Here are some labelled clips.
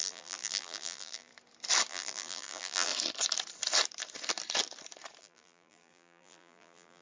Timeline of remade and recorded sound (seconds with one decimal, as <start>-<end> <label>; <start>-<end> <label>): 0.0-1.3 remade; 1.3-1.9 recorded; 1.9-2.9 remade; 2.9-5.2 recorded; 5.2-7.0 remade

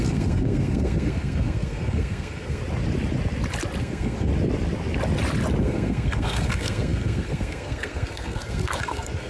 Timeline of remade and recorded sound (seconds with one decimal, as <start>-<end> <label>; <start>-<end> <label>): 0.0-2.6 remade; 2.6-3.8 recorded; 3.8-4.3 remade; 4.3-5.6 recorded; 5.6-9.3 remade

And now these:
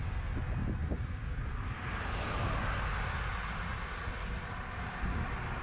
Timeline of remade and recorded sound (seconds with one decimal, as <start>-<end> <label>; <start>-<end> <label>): 0.0-5.6 recorded

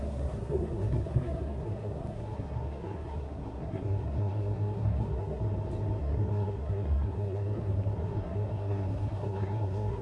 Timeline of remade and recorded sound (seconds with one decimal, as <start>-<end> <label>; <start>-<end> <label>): 0.0-5.4 remade; 5.4-6.0 recorded; 6.0-10.0 remade

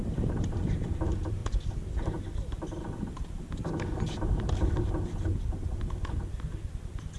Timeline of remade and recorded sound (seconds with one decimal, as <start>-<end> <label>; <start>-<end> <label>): 0.0-7.2 recorded

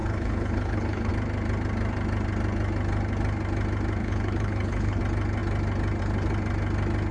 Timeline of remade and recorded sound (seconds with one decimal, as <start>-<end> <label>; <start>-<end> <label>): 0.0-1.1 remade; 1.1-4.0 recorded; 4.0-5.0 remade; 5.0-7.1 recorded